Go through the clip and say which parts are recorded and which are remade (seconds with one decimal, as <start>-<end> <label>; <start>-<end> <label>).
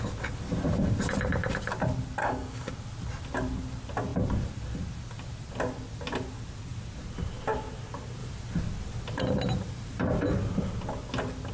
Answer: 0.0-2.2 recorded; 2.2-2.7 remade; 2.7-11.5 recorded